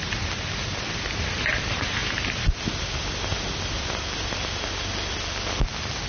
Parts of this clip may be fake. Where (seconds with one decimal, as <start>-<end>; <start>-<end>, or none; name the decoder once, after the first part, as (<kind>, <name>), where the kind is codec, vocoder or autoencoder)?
none